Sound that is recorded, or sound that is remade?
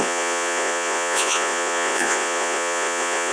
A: remade